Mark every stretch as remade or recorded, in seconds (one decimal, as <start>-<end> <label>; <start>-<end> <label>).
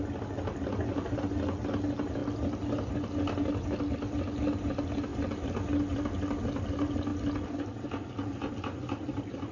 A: 0.0-9.5 recorded